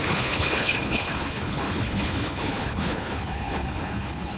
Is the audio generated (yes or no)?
yes